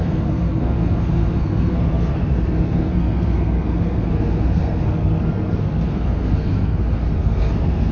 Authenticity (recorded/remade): remade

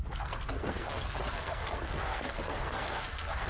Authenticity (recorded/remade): remade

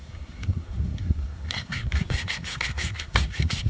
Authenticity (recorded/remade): remade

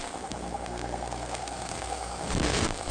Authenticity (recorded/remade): remade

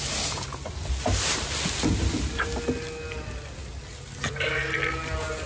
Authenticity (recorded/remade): recorded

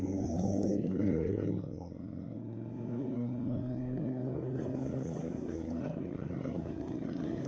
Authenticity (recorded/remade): remade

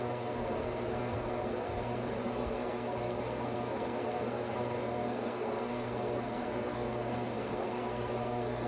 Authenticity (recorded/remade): remade